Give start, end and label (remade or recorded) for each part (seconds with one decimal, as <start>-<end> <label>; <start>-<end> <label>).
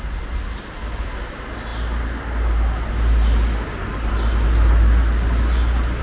0.0-6.0 recorded